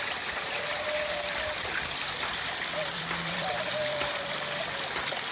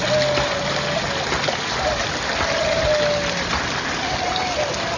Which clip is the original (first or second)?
second